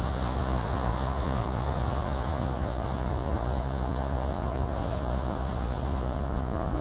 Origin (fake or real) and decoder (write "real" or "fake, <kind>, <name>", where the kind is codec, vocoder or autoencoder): fake, vocoder, Vocos